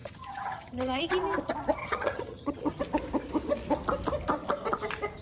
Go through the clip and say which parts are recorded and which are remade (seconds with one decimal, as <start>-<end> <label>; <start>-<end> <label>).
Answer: 0.0-1.0 remade; 1.0-1.8 recorded; 1.8-2.8 remade; 2.8-5.2 recorded